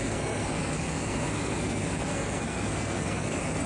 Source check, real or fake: fake